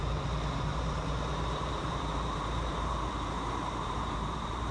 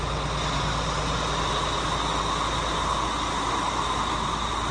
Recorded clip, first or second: second